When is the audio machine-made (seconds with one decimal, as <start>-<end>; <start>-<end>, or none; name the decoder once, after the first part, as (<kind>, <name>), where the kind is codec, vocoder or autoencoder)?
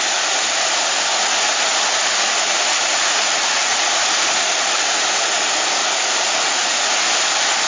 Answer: 1.1-4.5 (vocoder, Vocos); 5.8-7.1